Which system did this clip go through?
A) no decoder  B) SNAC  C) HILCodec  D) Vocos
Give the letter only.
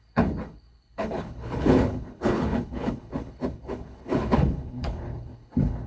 C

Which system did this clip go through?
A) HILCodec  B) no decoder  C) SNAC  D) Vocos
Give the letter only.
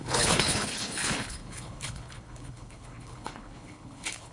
A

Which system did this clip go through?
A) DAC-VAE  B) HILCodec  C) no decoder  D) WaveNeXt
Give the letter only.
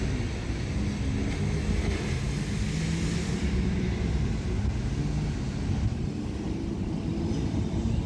C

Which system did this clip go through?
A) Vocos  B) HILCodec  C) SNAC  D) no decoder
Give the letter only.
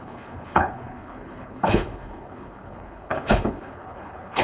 B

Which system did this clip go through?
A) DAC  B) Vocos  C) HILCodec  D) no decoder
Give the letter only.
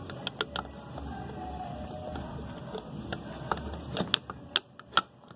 D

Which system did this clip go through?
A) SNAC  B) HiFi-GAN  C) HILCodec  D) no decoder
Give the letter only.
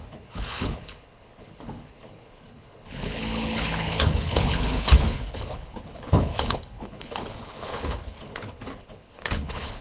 C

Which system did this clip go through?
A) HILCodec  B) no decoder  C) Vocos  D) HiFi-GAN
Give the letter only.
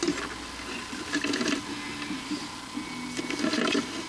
B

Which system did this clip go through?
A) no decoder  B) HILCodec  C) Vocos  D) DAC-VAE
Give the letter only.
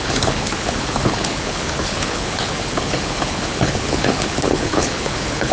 B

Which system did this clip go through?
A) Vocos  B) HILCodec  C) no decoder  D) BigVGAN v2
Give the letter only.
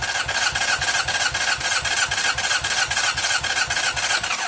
C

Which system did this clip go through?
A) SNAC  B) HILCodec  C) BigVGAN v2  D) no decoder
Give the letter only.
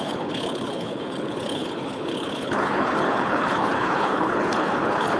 B